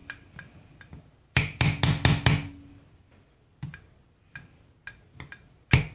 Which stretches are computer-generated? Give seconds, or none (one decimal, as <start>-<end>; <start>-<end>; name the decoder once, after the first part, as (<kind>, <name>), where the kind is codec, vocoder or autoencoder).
none